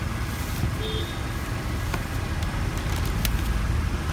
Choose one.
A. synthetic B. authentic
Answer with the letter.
B